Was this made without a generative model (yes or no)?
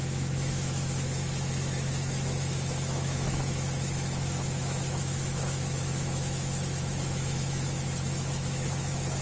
no